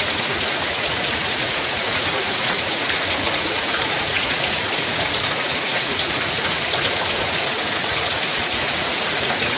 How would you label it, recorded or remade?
remade